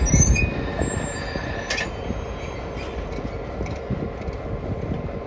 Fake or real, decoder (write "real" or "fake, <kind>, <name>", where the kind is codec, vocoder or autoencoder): real